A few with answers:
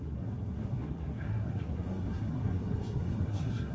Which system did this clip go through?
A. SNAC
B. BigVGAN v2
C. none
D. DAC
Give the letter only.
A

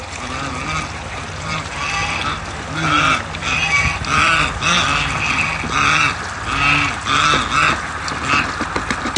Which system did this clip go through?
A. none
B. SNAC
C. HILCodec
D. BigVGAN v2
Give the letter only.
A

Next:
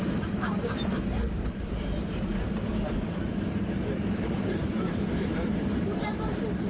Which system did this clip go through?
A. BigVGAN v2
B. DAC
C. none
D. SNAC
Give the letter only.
A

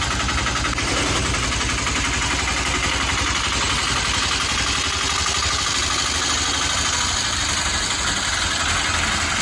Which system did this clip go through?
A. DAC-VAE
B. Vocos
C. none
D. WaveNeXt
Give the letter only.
C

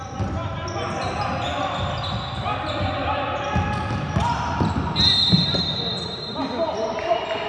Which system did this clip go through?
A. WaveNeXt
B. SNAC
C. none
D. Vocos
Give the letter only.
C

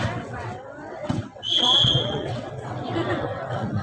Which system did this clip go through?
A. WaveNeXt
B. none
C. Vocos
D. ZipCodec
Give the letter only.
A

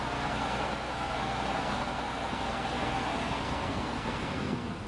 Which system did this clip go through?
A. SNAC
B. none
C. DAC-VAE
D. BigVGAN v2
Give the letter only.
A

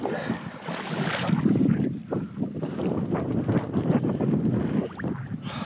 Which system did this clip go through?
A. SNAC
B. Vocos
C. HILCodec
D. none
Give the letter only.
D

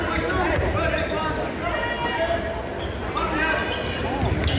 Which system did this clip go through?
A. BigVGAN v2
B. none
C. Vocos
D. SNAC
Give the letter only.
B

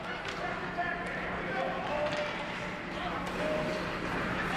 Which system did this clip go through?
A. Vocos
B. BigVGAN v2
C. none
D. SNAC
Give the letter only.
C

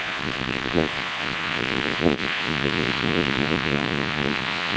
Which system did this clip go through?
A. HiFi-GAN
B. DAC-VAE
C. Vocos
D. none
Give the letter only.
C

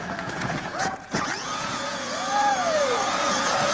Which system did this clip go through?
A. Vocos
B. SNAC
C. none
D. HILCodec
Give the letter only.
A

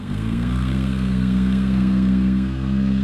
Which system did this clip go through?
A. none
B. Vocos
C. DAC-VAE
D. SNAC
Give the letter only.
D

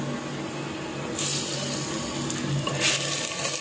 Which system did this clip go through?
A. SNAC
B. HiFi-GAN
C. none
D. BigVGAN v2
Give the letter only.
C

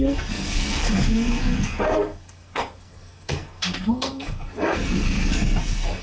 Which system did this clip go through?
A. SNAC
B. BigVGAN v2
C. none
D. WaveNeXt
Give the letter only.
A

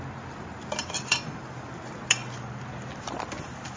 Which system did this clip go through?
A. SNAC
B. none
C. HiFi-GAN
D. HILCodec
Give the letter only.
B